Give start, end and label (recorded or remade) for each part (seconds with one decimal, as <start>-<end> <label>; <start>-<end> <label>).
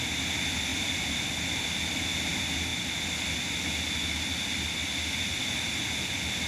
0.0-0.7 recorded; 0.7-1.3 remade; 1.3-6.5 recorded